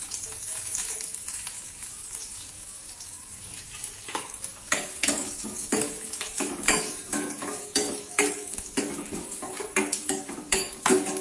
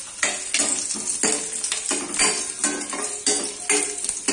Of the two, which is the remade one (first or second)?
first